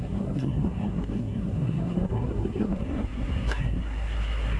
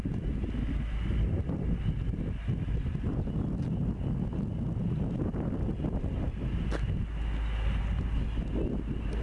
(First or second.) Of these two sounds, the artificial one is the first